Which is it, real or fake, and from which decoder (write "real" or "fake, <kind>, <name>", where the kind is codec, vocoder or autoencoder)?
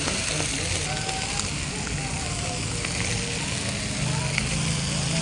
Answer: real